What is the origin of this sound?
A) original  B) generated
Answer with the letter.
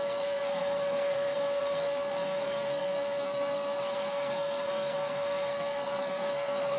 B